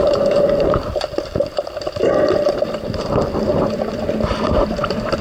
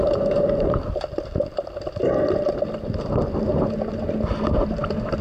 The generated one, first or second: first